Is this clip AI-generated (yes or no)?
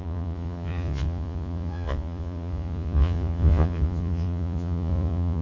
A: yes